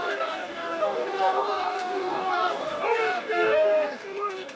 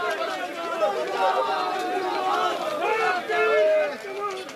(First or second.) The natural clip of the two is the second